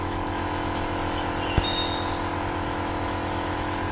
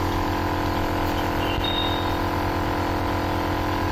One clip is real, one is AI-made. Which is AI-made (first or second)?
first